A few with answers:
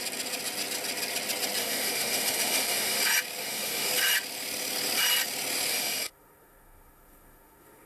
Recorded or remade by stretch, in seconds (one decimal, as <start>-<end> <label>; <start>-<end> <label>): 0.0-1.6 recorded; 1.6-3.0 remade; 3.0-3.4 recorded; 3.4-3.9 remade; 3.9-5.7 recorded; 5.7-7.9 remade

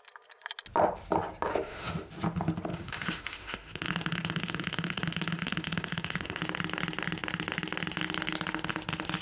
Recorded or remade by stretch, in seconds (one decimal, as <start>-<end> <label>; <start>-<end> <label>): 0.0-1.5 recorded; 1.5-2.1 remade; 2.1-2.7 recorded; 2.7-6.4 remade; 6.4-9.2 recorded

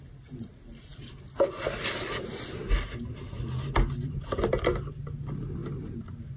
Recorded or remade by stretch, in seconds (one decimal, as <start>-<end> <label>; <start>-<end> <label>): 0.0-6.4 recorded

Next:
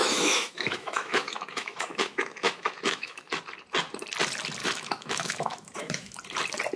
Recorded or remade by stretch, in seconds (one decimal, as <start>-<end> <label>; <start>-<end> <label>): 0.0-3.3 remade; 3.3-4.6 recorded; 4.6-6.2 remade; 6.2-6.8 recorded